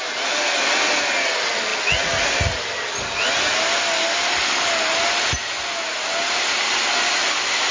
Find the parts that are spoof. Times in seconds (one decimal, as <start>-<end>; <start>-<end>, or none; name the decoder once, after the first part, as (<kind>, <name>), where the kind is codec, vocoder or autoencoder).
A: none